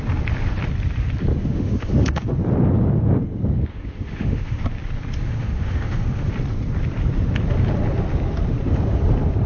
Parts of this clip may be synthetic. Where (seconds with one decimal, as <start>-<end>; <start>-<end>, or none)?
1.4-2.3; 3.7-4.6; 5.2-6.3